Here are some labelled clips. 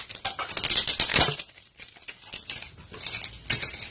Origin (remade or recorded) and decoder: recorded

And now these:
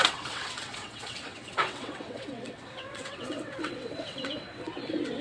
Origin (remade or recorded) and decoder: remade, vocoder, WaveNeXt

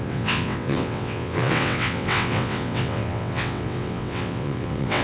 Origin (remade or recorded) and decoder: remade, vocoder, WaveNeXt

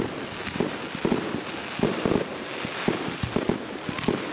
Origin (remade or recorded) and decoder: recorded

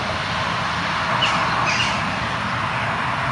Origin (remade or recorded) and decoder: recorded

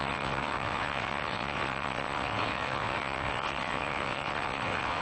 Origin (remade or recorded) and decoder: remade, vocoder, WaveNeXt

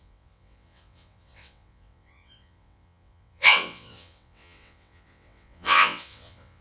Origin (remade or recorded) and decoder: remade, vocoder, WaveNeXt